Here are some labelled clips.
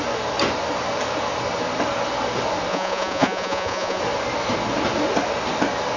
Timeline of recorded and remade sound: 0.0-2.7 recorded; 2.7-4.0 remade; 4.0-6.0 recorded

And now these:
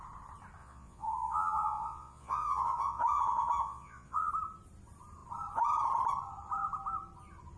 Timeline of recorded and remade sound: 0.0-0.6 recorded; 0.6-4.3 remade; 4.3-7.6 recorded

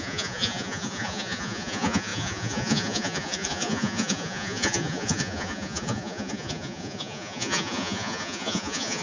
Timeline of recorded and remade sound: 0.0-9.0 remade

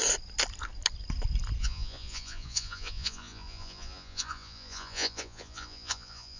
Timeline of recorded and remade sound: 0.0-1.6 recorded; 1.6-6.4 remade

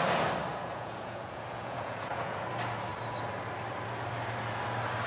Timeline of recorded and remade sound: 0.0-0.5 recorded; 0.5-2.5 remade; 2.5-5.1 recorded

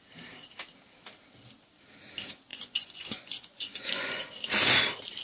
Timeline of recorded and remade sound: 0.0-2.5 recorded; 2.5-4.2 remade; 4.2-5.2 recorded

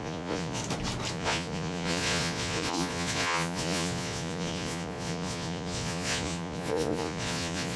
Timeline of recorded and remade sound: 0.0-0.6 remade; 0.6-1.1 recorded; 1.1-7.8 remade